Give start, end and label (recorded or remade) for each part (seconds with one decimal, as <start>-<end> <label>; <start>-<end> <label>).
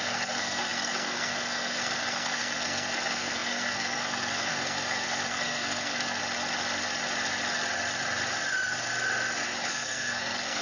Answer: 0.0-6.2 remade; 6.2-9.7 recorded; 9.7-10.6 remade